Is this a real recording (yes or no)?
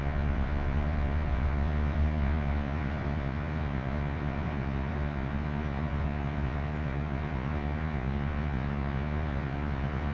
no